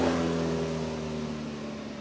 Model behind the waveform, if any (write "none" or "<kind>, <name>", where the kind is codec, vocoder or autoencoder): none